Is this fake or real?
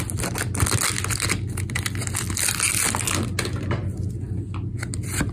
real